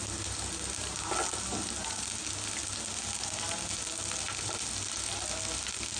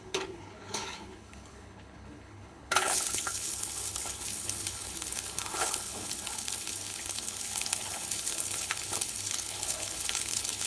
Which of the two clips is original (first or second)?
first